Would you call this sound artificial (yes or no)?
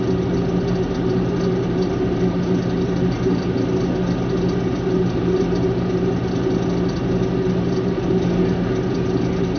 no